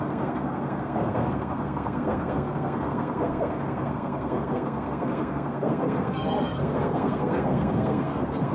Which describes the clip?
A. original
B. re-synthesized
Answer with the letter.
B